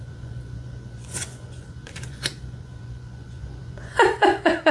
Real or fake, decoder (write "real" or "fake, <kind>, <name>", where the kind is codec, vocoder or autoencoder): fake, vocoder, Vocos